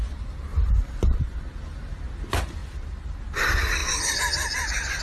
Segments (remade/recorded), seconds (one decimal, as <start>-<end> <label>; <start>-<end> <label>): 0.0-0.5 recorded; 0.5-1.2 remade; 1.2-2.6 recorded; 2.6-3.2 remade; 3.2-3.8 recorded; 3.8-5.0 remade